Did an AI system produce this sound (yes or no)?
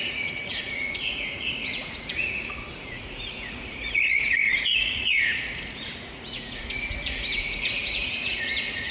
yes